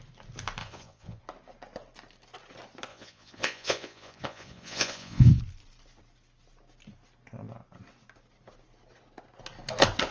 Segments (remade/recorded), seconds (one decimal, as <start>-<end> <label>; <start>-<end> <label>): 0.0-0.6 recorded; 0.6-1.2 remade; 1.2-2.9 recorded; 2.9-5.4 remade; 5.4-10.1 recorded